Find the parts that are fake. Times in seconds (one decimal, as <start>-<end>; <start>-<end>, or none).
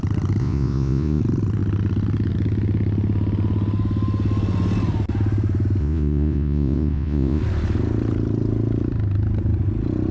0.4-1.2; 5.8-7.4